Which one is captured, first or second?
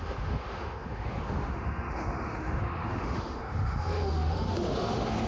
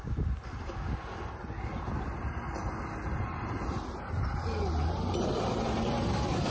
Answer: second